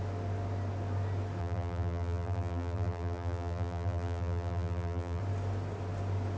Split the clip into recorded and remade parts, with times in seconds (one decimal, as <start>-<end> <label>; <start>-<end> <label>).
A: 0.0-1.4 recorded; 1.4-5.2 remade; 5.2-6.4 recorded